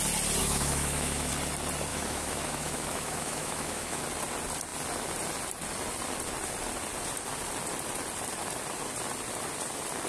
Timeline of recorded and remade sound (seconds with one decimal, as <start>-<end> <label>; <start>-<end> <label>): 0.0-0.4 recorded; 0.4-1.3 remade; 1.3-1.9 recorded; 1.9-4.0 remade; 4.0-10.1 recorded